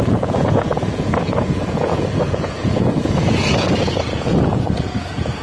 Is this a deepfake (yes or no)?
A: yes